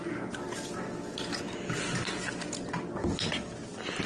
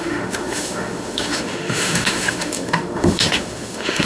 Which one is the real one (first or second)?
first